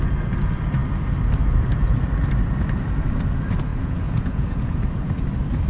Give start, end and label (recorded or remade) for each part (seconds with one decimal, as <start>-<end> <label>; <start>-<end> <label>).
0.0-3.7 recorded; 3.7-4.7 remade; 4.7-5.7 recorded